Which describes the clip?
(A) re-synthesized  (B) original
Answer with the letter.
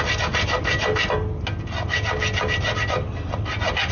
B